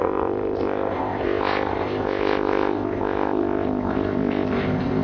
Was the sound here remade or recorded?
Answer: remade